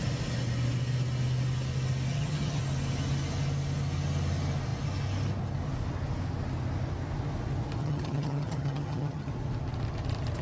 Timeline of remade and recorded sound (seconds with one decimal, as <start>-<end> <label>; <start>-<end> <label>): 0.0-2.1 recorded; 2.1-2.6 remade; 2.6-7.8 recorded; 7.8-9.3 remade; 9.3-10.4 recorded